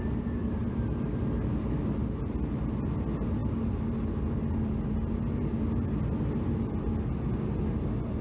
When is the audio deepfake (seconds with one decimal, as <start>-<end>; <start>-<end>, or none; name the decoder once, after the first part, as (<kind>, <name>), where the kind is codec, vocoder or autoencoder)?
none